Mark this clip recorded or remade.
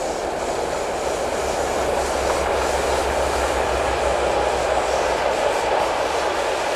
recorded